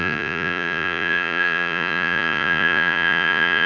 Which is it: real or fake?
fake